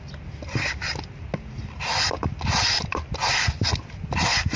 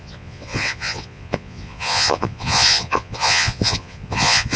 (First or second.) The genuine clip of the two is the first